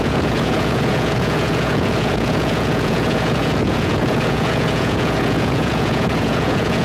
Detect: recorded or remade remade